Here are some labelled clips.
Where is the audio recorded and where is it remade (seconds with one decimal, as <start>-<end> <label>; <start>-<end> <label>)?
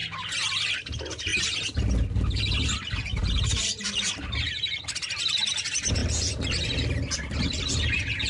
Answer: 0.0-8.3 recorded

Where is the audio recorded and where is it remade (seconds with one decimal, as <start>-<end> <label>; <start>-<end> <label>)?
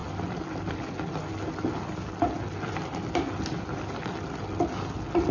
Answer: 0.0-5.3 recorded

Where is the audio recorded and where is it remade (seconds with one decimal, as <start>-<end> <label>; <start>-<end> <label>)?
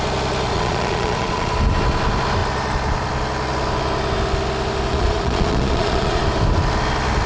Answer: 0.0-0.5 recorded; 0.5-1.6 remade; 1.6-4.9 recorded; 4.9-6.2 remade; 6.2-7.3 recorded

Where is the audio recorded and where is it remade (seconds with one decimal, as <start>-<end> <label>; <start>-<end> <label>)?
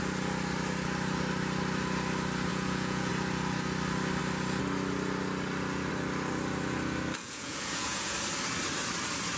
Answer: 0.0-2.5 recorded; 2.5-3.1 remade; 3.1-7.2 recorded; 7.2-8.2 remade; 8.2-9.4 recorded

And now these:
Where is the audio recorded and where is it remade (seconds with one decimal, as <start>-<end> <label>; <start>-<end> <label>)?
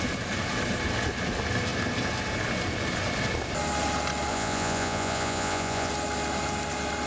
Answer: 0.0-4.3 recorded; 4.3-5.9 remade; 5.9-7.1 recorded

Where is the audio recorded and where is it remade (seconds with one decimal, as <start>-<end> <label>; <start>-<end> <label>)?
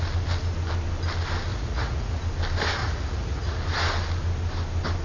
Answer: 0.0-1.5 recorded; 1.5-2.2 remade; 2.2-2.8 recorded; 2.8-3.6 remade; 3.6-5.0 recorded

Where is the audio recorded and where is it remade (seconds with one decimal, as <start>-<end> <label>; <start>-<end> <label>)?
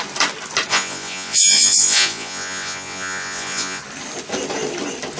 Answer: 0.0-0.7 recorded; 0.7-3.8 remade; 3.8-5.2 recorded